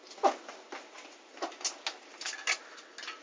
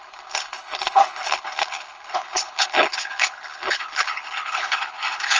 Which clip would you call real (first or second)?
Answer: first